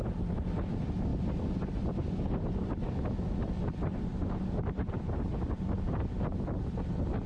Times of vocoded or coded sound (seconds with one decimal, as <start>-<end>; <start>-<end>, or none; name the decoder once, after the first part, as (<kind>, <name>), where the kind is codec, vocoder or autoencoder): none